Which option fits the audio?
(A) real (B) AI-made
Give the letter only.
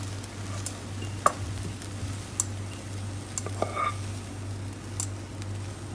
A